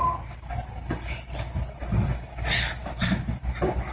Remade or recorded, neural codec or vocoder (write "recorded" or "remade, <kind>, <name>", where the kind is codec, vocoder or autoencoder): recorded